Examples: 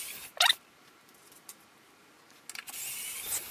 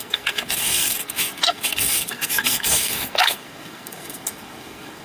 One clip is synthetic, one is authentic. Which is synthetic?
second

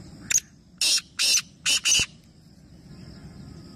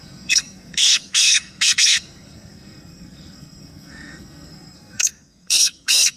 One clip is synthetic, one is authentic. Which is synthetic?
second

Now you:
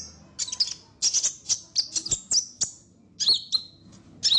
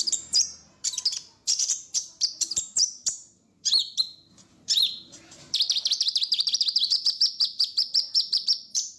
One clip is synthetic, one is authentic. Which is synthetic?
second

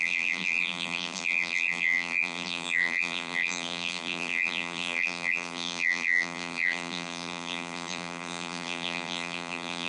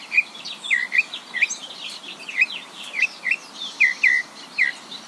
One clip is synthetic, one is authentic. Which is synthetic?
first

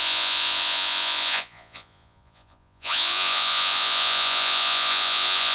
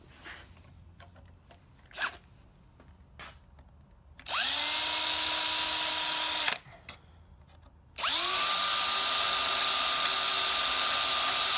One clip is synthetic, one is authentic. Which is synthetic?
first